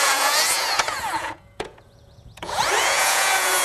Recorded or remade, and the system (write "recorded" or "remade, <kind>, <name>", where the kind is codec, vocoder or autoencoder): remade, vocoder, Vocos